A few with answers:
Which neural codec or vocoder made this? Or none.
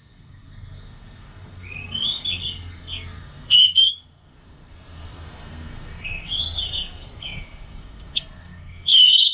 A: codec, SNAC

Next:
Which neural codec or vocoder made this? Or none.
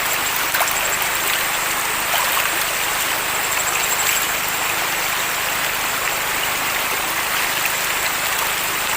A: none